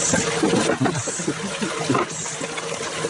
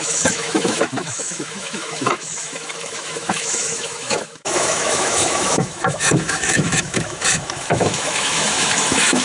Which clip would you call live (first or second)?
first